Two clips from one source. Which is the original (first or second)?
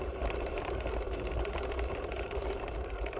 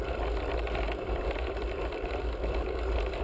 second